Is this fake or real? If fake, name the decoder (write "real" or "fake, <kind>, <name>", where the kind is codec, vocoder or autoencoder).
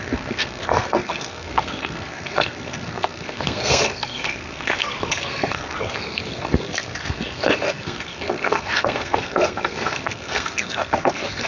fake, codec, SNAC